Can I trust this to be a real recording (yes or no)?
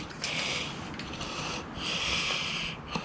yes